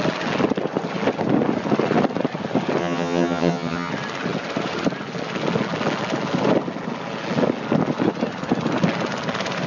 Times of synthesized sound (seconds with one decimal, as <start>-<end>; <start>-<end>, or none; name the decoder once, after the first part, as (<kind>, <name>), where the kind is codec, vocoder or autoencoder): 2.8-3.9 (vocoder, HiFi-GAN)